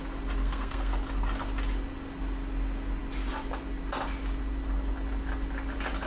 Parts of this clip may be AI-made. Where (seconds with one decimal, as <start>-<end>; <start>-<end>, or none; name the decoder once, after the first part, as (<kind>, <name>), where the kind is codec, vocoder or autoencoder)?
0.4-0.9 (codec, SNAC)